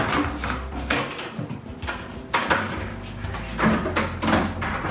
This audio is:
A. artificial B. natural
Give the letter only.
B